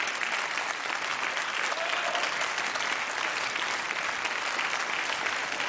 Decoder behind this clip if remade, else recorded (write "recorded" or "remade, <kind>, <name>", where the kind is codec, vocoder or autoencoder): recorded